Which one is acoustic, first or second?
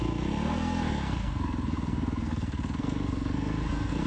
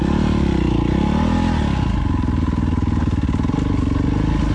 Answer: second